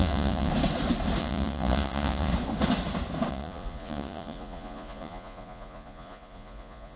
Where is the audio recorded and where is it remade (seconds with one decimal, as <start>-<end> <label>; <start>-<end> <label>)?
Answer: 0.0-0.5 remade; 0.5-1.2 recorded; 1.2-2.3 remade; 2.3-3.3 recorded; 3.3-7.0 remade